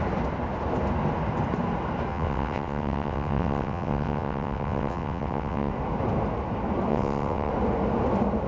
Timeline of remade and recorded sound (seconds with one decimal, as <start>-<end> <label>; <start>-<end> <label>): 0.0-2.1 recorded; 2.1-5.7 remade; 5.7-6.9 recorded; 6.9-7.5 remade; 7.5-8.5 recorded